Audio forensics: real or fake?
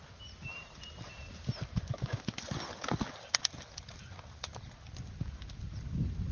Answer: real